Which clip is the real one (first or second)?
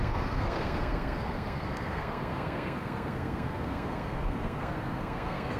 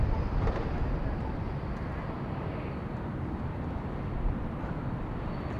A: second